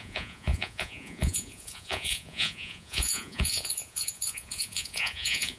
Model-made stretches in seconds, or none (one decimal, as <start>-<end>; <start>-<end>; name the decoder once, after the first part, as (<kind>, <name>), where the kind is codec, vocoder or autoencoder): 0.0-5.6 (vocoder, Vocos)

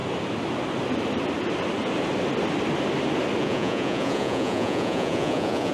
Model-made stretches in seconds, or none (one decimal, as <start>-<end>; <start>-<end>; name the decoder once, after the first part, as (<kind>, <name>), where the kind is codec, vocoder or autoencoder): 3.4-5.7 (vocoder, Vocos)

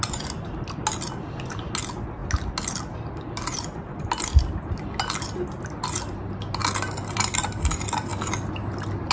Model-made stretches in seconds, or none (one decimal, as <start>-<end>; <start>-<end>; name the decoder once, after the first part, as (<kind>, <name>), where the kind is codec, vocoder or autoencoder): none